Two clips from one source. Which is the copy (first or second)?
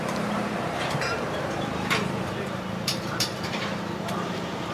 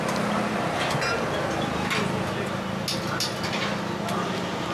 first